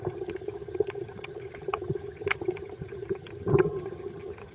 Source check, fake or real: fake